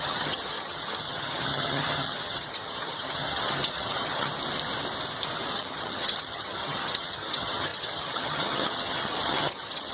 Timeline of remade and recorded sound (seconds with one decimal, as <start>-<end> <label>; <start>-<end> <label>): 0.0-4.3 remade; 4.3-5.5 recorded; 5.5-9.9 remade